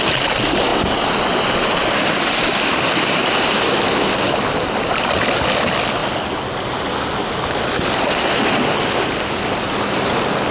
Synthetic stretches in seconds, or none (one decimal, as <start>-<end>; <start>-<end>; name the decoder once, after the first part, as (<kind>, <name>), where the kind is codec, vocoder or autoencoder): none